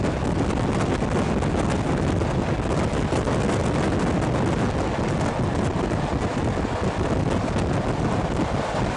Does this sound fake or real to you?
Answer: real